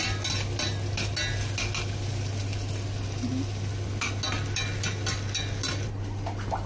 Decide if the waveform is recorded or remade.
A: recorded